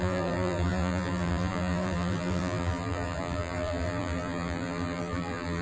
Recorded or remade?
remade